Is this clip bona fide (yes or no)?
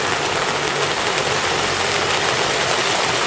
yes